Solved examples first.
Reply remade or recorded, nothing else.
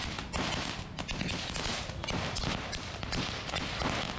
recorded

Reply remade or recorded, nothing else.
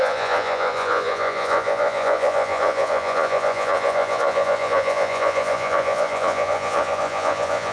remade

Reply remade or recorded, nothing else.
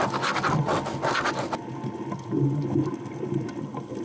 recorded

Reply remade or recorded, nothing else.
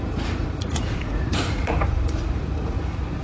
remade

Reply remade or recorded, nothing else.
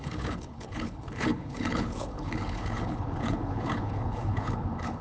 remade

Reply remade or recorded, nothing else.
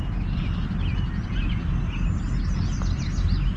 recorded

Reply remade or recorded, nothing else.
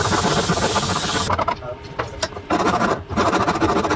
recorded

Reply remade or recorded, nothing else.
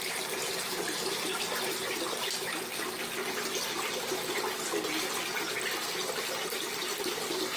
recorded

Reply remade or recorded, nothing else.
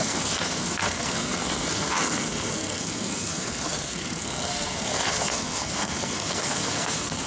remade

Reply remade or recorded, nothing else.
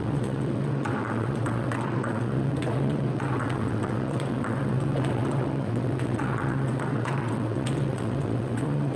remade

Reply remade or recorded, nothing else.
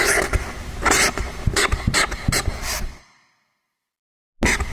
recorded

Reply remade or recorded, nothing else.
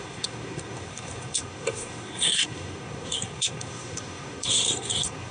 remade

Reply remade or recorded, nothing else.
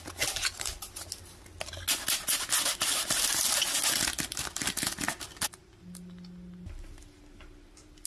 recorded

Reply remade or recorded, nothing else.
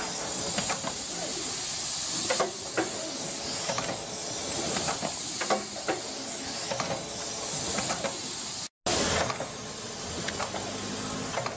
recorded